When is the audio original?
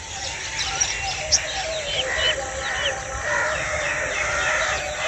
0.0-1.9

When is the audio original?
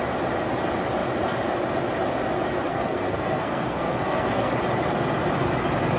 0.0-2.7; 4.5-6.0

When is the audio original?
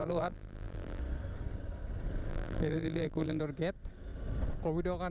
1.0-2.3; 3.4-5.1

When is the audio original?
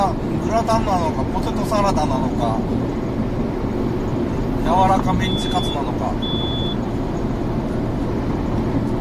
0.0-9.0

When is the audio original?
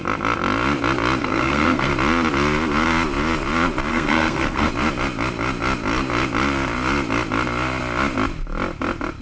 0.0-1.2; 1.9-3.9; 4.7-9.2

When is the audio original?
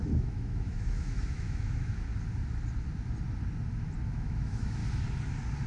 2.1-4.1; 4.8-5.7